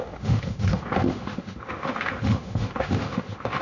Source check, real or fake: fake